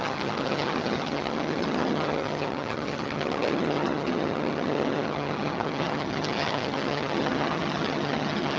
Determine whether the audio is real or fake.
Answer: fake